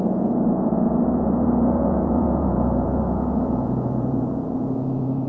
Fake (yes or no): yes